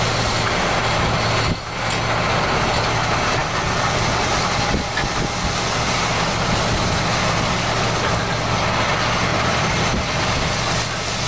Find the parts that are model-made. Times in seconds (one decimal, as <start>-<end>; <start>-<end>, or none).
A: 9.3-10.2